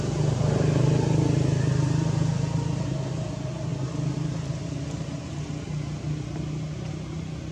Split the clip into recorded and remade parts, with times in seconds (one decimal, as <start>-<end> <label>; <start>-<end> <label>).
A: 0.0-7.5 recorded